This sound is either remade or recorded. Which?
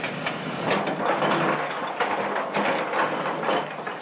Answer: recorded